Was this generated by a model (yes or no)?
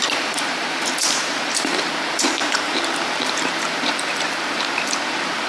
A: yes